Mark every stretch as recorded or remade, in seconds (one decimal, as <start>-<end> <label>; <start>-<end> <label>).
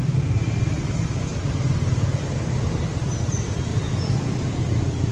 0.0-3.7 recorded; 3.7-4.4 remade; 4.4-5.1 recorded